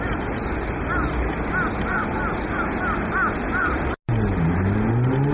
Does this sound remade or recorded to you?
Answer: recorded